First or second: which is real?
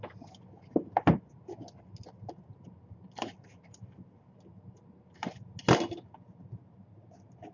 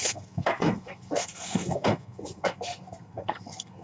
first